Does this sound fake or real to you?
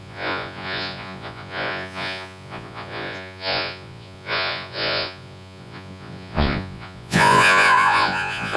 fake